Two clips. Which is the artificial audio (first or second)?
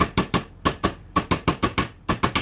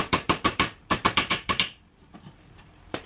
second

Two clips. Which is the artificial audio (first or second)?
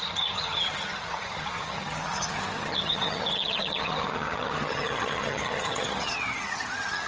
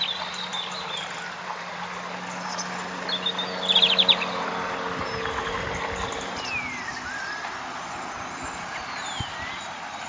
first